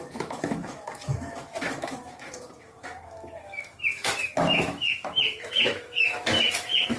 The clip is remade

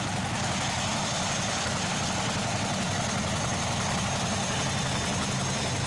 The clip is recorded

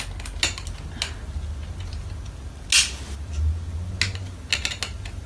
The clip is recorded